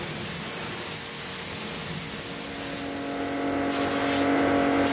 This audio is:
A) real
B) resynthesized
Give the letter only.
A